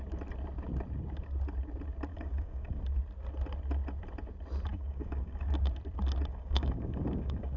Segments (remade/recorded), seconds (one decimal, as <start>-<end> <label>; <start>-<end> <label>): 0.0-2.1 recorded; 2.1-2.8 remade; 2.8-4.7 recorded; 4.7-5.5 remade; 5.5-6.3 recorded; 6.3-7.6 remade